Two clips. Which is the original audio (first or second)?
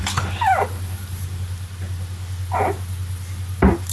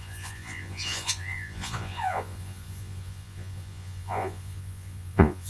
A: first